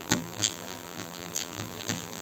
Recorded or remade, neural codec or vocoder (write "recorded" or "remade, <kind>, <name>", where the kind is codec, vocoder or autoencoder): remade, vocoder, BigVGAN v2